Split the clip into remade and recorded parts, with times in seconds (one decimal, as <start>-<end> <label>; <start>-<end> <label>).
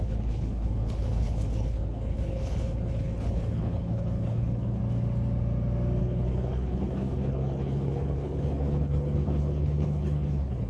0.0-4.8 remade; 4.8-6.0 recorded; 6.0-10.7 remade